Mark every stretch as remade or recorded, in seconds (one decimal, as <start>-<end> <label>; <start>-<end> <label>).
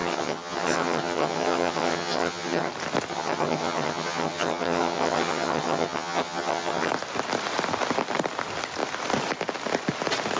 0.0-2.7 remade; 2.7-3.1 recorded; 3.1-6.9 remade; 6.9-10.4 recorded